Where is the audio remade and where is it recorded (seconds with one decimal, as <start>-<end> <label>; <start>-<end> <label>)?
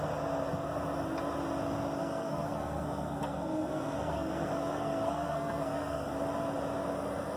0.0-2.0 recorded; 2.0-6.1 remade; 6.1-7.4 recorded